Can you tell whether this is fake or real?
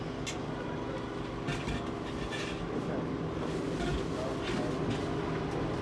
real